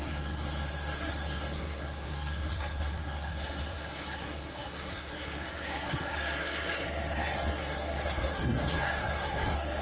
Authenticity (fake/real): fake